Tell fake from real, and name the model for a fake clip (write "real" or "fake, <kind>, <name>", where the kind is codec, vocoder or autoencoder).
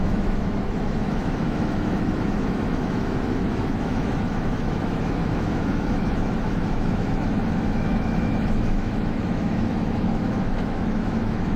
fake, autoencoder, DAC-VAE